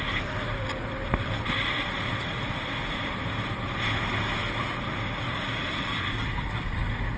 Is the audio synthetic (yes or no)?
no